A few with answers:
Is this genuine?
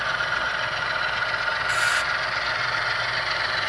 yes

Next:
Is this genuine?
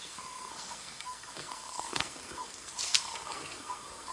no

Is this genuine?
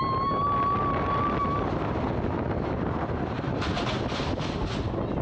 yes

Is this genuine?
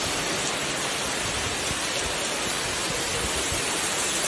yes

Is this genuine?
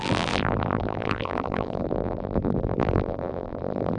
no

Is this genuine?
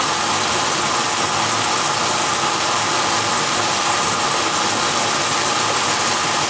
yes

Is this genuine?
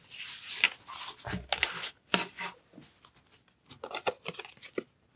yes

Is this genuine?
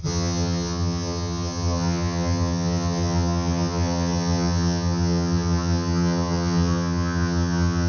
no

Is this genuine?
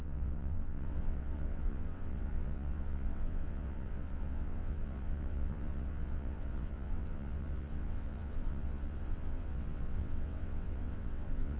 no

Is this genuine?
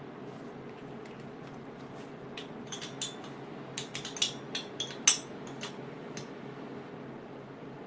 yes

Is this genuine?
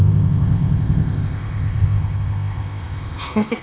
no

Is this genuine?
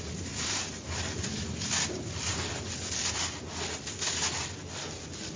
yes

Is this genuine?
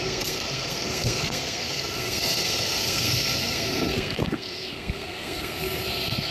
no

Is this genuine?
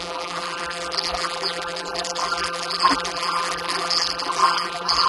no